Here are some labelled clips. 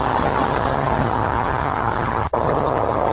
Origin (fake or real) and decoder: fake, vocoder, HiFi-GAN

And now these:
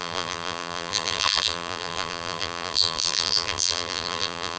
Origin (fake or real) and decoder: fake, vocoder, BigVGAN v2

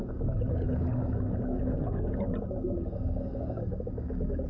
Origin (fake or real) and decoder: fake, codec, DAC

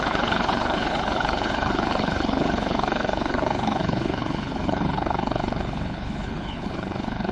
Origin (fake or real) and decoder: fake, codec, HILCodec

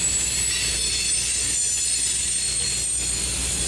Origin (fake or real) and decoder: real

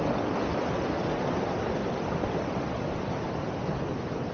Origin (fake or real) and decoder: real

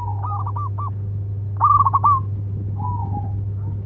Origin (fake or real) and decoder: real